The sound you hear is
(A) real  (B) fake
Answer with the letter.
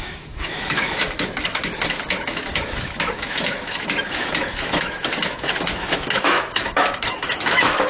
B